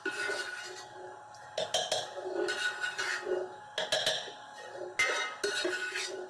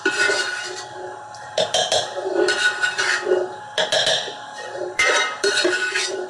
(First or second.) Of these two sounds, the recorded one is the first